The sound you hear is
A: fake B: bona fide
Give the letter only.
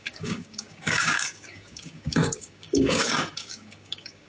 A